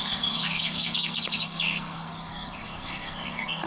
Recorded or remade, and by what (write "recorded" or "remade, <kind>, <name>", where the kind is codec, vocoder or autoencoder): remade, codec, SNAC